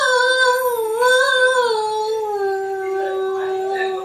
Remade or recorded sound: recorded